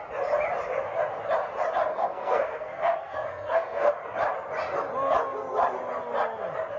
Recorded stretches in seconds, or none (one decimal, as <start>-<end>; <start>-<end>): 0.0-1.9; 3.9-6.8